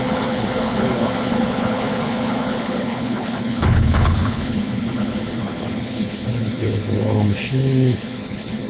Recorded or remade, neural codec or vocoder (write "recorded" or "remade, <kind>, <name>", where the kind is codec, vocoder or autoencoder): remade, codec, HILCodec